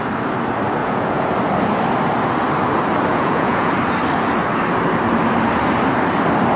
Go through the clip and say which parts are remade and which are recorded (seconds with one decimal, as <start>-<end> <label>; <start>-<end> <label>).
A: 0.0-0.8 recorded; 0.8-1.3 remade; 1.3-3.1 recorded; 3.1-3.7 remade; 3.7-6.6 recorded